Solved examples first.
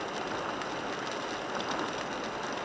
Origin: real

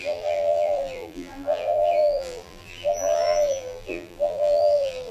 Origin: fake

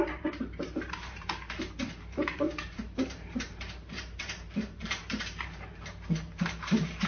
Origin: fake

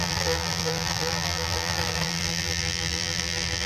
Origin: fake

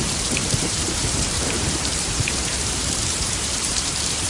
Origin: fake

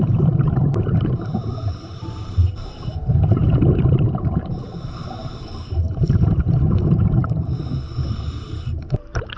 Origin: fake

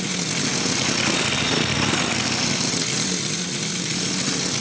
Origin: real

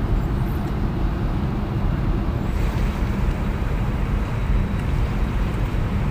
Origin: fake